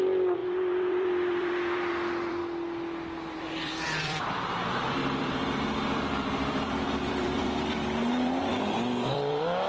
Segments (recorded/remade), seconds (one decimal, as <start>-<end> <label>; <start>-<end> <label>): 0.0-2.4 remade; 2.4-3.2 recorded; 3.2-9.7 remade